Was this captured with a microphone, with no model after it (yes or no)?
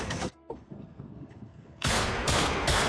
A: no